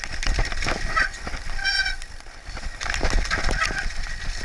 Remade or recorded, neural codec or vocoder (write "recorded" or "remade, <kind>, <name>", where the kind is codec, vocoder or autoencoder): recorded